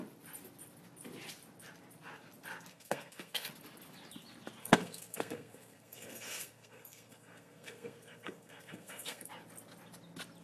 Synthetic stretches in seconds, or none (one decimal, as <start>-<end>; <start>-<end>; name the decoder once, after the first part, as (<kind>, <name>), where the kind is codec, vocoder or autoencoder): 2.7-3.5 (codec, SNAC); 4.6-9.3